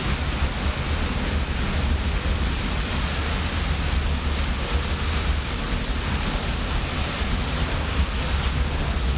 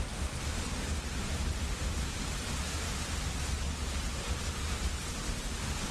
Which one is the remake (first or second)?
second